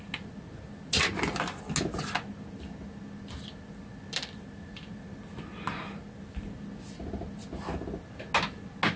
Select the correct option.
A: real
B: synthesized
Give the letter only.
A